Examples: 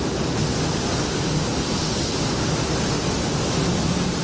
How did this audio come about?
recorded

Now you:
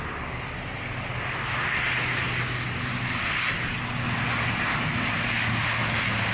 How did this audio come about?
recorded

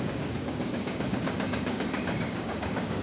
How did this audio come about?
remade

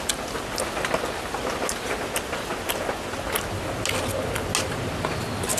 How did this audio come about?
recorded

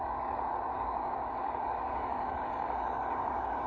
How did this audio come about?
remade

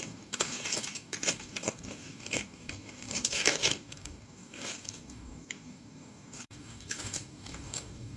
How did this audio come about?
remade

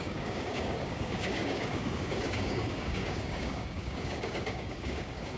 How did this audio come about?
remade